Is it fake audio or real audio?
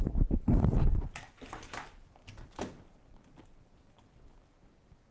real